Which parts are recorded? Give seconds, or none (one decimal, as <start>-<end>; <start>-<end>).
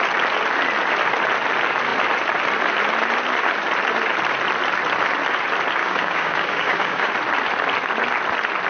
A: 0.0-5.8; 7.1-8.7